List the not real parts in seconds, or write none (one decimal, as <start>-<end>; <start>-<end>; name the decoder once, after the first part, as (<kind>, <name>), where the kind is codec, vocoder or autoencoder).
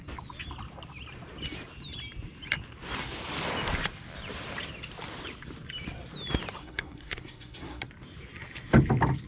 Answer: 6.6-7.8 (codec, SNAC)